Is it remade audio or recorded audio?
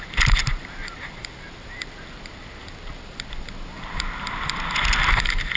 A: recorded